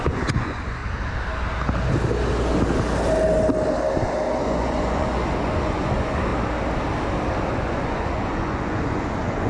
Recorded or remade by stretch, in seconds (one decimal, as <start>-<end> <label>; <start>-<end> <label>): 0.0-0.8 remade; 0.8-4.3 recorded; 4.3-6.3 remade; 6.3-7.5 recorded; 7.5-9.5 remade